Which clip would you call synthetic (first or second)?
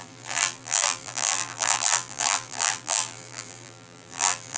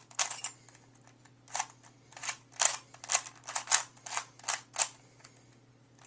first